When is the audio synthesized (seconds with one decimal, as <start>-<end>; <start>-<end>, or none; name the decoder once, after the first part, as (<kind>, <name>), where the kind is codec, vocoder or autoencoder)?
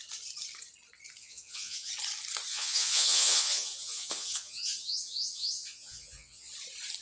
1.2-1.9 (vocoder, Vocos); 2.5-6.5